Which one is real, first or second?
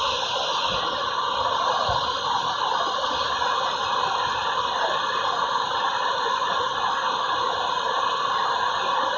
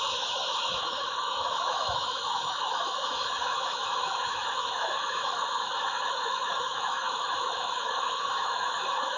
first